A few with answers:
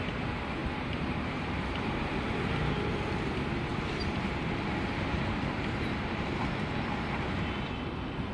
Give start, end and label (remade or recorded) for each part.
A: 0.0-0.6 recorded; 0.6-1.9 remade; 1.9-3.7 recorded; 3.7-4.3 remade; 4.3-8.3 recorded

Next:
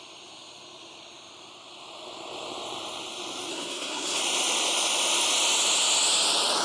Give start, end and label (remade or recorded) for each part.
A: 0.0-3.5 recorded; 3.5-4.2 remade; 4.2-6.6 recorded